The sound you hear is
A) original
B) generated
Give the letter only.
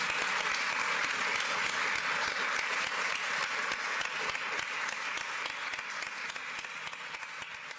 A